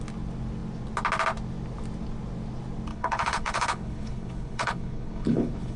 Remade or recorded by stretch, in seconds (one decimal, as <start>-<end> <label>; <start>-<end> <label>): 0.0-2.9 recorded; 2.9-5.8 remade